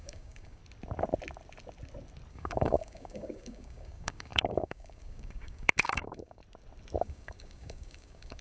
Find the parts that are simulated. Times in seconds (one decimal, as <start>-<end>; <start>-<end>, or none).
0.0-0.6; 2.3-6.4; 7.0-8.4